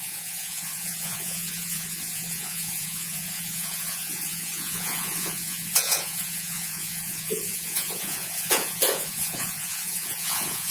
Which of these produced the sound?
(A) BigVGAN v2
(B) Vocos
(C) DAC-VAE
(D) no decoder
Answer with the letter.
B